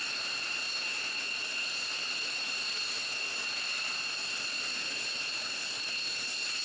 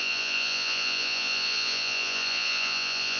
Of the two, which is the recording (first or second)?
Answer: first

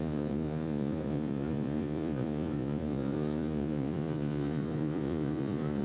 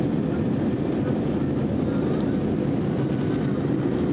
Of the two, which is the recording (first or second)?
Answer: second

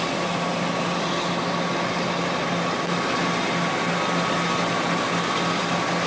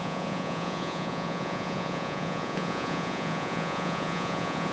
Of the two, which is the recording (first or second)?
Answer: first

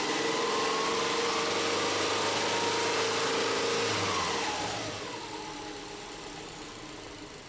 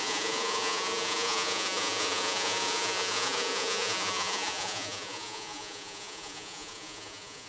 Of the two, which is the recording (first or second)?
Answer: first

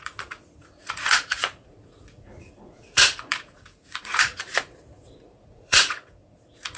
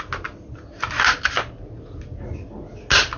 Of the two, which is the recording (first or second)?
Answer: second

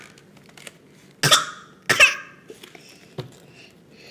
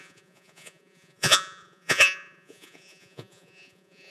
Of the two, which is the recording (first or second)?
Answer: first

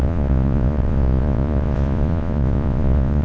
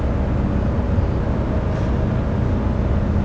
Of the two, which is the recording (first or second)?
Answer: second